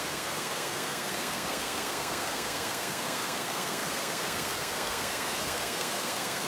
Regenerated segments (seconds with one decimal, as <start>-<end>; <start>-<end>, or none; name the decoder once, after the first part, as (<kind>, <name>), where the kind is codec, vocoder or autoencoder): 0.0-6.5 (codec, SNAC)